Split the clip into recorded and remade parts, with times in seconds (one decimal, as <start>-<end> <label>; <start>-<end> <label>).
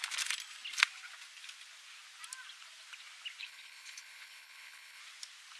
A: 0.0-3.4 recorded; 3.4-5.0 remade; 5.0-5.6 recorded